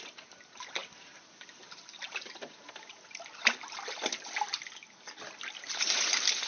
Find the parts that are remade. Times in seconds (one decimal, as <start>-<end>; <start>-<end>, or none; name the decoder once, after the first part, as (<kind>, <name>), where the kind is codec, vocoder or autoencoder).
none